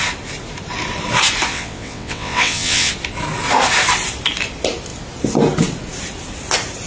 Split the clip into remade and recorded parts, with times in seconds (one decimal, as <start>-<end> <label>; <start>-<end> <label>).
0.0-1.5 recorded; 1.5-2.9 remade; 2.9-6.9 recorded